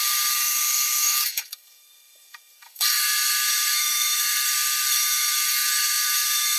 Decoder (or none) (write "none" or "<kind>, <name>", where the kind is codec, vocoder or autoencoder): codec, SNAC